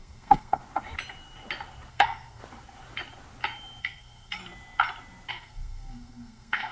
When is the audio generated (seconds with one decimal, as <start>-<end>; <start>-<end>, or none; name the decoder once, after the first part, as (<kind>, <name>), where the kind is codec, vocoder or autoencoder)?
0.0-0.6 (codec, SNAC); 1.9-2.4; 3.8-4.4; 5.3-6.7